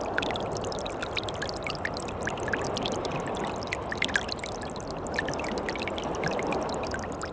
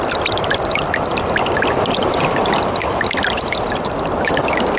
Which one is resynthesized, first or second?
second